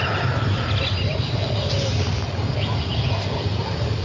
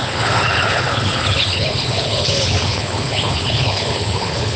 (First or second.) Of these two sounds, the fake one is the second